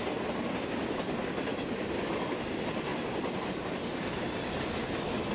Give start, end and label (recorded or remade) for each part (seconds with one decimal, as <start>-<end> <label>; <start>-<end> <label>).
0.0-0.6 remade; 0.6-1.5 recorded; 1.5-2.4 remade; 2.4-5.3 recorded